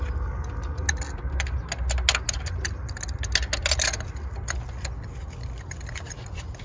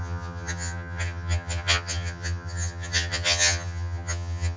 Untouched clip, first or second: first